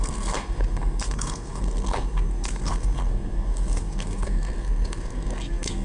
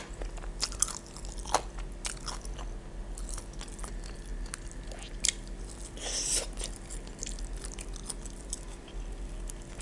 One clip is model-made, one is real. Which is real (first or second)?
second